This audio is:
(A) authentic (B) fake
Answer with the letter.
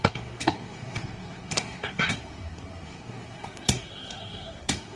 B